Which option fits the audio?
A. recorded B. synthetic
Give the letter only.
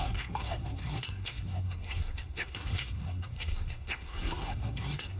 B